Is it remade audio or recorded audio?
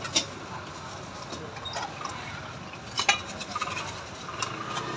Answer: recorded